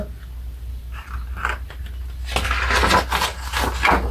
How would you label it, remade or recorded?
recorded